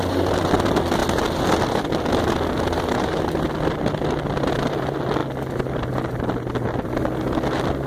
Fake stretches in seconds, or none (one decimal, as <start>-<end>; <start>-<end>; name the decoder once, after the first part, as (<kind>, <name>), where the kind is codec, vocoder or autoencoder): none